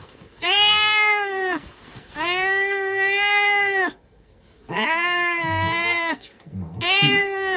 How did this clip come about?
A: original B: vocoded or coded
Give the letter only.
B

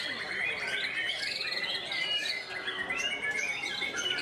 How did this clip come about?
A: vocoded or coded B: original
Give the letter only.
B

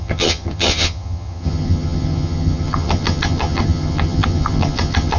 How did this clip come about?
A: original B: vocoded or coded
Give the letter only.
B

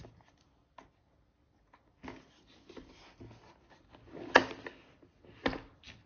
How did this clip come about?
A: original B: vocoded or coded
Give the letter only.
A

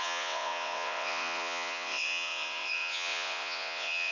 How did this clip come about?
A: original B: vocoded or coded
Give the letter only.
B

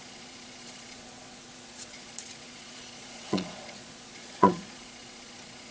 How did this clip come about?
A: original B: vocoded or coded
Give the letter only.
B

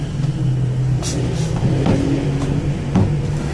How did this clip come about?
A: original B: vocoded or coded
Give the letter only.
A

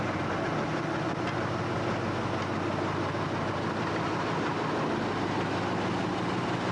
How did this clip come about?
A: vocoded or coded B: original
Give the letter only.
B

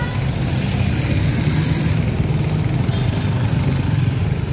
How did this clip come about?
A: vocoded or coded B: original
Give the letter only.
B